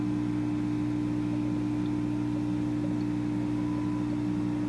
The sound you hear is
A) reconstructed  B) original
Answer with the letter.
B